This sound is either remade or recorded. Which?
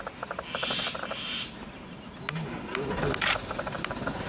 recorded